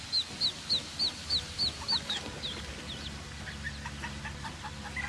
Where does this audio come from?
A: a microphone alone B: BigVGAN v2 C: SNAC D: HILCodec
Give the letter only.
A